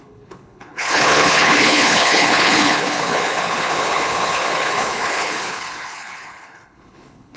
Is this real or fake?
fake